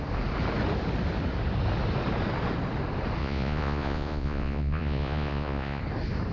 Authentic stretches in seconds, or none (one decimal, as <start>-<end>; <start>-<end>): 0.0-3.2; 5.8-6.3